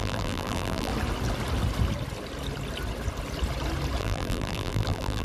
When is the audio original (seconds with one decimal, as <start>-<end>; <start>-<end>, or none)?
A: 0.9-4.0